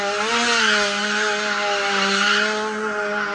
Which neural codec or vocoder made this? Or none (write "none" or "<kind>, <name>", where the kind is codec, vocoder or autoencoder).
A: none